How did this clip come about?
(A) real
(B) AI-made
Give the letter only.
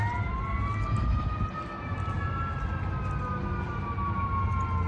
A